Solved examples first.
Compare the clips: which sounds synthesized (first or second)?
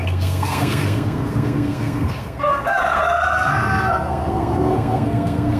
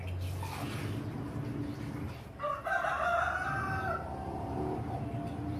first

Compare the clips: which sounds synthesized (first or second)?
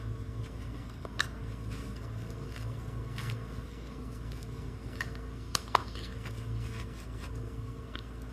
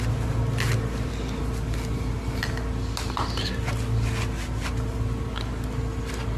first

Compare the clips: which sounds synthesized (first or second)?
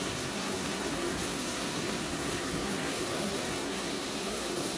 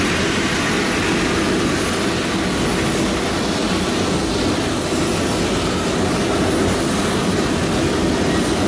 first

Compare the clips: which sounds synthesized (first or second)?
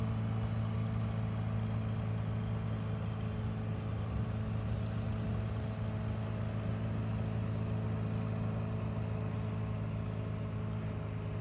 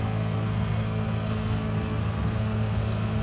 second